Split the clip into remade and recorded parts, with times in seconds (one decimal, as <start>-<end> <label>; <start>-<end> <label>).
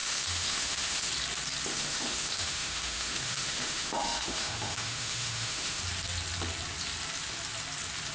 0.0-1.1 remade; 1.1-1.7 recorded; 1.7-5.8 remade; 5.8-8.1 recorded